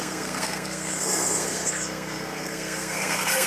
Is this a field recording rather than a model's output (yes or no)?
no